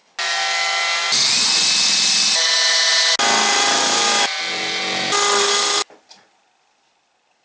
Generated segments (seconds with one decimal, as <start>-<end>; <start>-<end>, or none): none